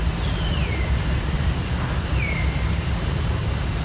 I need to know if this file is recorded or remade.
recorded